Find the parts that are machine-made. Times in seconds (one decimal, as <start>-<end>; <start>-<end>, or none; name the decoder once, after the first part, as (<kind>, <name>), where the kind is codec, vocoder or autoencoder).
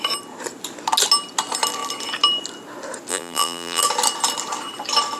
3.1-3.8 (vocoder, BigVGAN v2)